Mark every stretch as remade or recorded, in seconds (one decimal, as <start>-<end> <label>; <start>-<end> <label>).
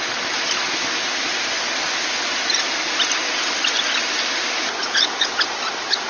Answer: 0.0-4.8 recorded; 4.8-5.5 remade; 5.5-6.1 recorded